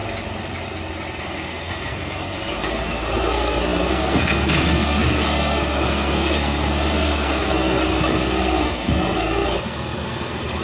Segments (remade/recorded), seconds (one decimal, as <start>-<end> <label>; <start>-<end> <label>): 0.0-1.2 recorded; 1.2-10.6 remade